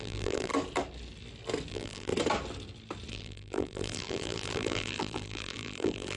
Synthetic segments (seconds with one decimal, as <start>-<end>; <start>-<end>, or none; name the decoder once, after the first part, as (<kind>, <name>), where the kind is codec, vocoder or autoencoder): 0.0-0.5 (vocoder, BigVGAN v2); 1.7-2.1; 3.1-6.2